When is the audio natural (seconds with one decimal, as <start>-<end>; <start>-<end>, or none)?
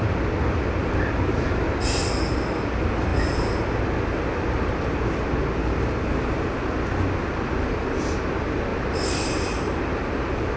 0.0-8.7